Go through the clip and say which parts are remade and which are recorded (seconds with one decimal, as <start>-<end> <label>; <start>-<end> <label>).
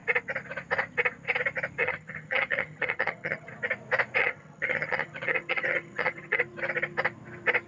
0.0-1.8 recorded; 1.8-3.5 remade; 3.5-4.2 recorded; 4.2-6.4 remade; 6.4-7.7 recorded